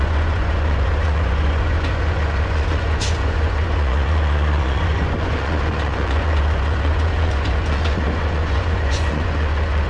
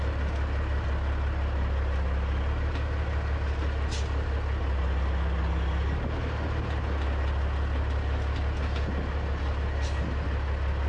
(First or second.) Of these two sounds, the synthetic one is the first